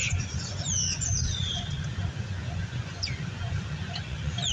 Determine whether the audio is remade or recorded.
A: remade